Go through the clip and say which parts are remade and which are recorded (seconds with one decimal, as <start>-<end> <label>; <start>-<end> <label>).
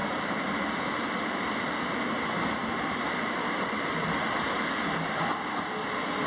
0.0-6.3 recorded